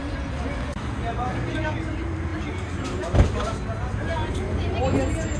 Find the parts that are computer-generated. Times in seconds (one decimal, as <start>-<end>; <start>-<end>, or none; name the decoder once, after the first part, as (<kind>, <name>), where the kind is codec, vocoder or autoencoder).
none